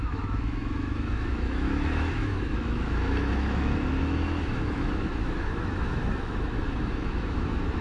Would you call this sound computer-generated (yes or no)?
yes